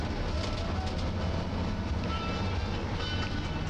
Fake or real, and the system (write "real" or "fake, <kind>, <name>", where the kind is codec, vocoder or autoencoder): real